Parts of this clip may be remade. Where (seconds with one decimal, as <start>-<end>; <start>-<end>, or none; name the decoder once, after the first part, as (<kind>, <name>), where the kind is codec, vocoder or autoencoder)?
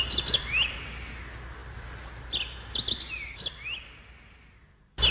none